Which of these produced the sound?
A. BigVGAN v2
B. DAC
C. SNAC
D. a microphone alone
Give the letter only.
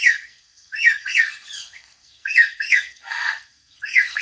C